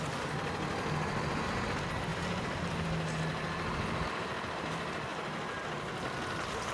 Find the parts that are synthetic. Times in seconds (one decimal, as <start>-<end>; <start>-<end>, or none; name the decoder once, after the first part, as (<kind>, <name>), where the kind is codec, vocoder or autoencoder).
none